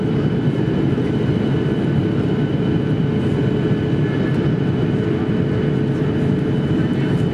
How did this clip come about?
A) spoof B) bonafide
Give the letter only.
B